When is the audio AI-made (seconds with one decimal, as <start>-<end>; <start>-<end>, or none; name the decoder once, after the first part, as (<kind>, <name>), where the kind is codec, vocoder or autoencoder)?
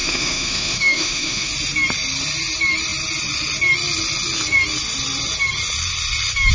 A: 0.0-1.5 (autoencoder, DAC-VAE)